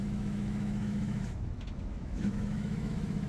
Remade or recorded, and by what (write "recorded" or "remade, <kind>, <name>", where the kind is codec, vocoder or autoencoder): remade, autoencoder, DAC-VAE